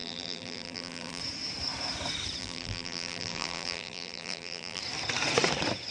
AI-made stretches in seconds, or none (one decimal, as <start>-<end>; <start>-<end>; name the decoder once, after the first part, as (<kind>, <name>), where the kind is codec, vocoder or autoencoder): 0.0-1.2 (vocoder, BigVGAN v2); 2.4-4.8